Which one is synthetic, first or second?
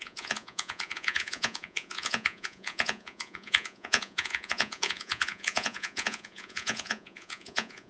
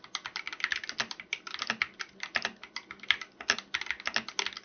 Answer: first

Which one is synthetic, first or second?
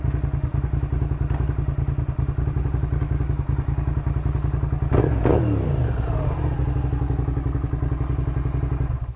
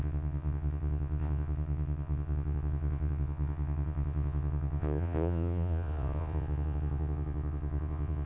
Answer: second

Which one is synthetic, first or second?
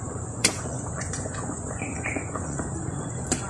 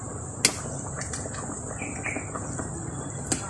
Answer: first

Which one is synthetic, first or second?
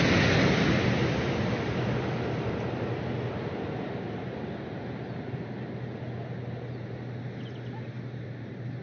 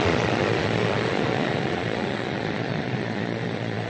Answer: second